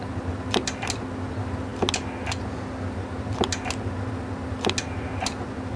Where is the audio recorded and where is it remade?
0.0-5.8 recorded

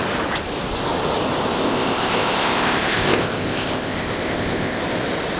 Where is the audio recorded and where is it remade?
0.0-1.6 recorded; 1.6-4.8 remade; 4.8-5.4 recorded

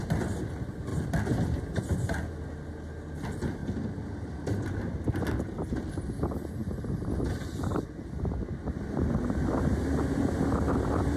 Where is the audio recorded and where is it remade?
0.0-11.2 recorded

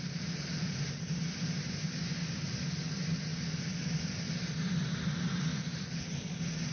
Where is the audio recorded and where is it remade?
0.0-3.3 remade; 3.3-3.9 recorded; 3.9-5.5 remade; 5.5-6.7 recorded

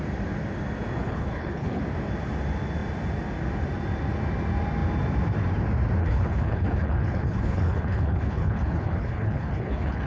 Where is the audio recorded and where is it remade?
0.0-1.0 recorded; 1.0-1.8 remade; 1.8-6.0 recorded; 6.0-10.1 remade